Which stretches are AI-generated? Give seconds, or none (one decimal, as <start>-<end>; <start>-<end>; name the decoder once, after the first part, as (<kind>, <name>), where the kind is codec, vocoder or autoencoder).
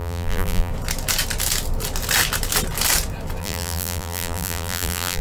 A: 0.0-0.7 (vocoder, BigVGAN v2); 3.4-5.2